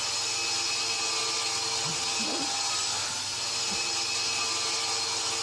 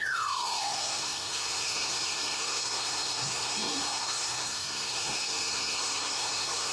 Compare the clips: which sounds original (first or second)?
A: first